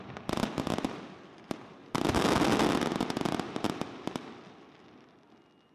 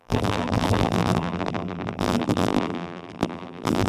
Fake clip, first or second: second